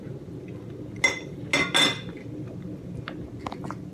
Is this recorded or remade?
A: recorded